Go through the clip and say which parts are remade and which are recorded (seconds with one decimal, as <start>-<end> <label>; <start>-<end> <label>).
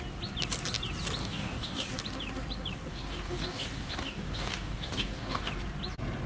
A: 0.0-1.2 recorded; 1.2-1.9 remade; 1.9-2.9 recorded; 2.9-5.5 remade; 5.5-6.3 recorded